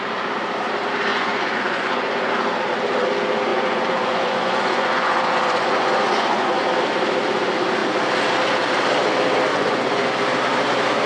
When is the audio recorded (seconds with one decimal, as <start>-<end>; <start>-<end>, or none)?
0.0-1.1; 2.3-3.5; 6.6-9.5; 10.1-11.1